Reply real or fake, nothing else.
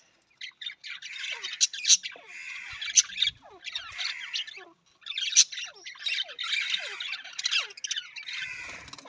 real